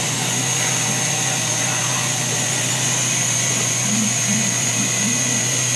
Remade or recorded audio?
remade